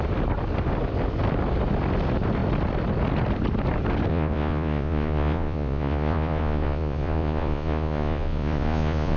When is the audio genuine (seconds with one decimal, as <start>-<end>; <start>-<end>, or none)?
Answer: 0.0-4.1